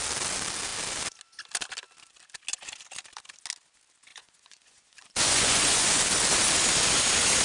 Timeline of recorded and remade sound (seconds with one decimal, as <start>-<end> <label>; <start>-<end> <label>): 0.0-4.1 recorded; 4.1-6.0 remade; 6.0-7.4 recorded